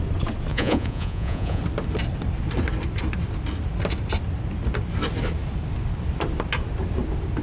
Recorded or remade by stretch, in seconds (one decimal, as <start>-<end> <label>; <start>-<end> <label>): 0.0-0.5 recorded; 0.5-1.6 remade; 1.6-7.4 recorded